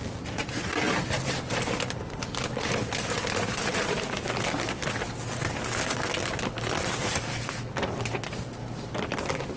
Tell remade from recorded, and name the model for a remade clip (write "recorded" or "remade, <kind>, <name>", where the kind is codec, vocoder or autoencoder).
recorded